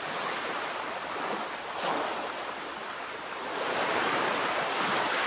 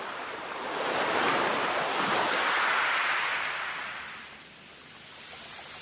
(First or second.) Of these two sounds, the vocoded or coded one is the first